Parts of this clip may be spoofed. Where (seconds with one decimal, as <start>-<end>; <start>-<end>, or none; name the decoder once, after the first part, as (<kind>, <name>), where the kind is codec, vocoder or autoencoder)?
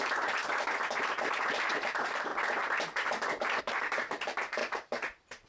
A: 0.0-0.4 (vocoder, BigVGAN v2); 1.0-2.3; 3.6-5.5